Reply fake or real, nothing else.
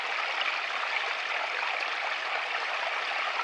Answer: real